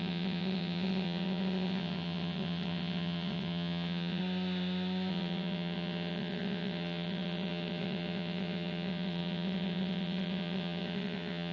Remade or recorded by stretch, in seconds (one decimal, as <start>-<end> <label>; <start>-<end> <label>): 0.0-4.2 remade; 4.2-5.1 recorded; 5.1-11.5 remade